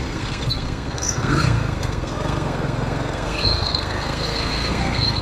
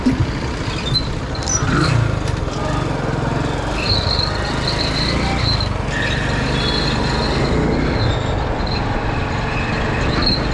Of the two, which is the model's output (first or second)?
first